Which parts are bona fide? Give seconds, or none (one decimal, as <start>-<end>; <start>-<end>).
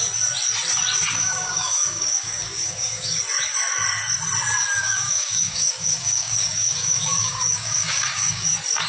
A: 0.0-1.2; 3.2-4.8; 8.5-8.9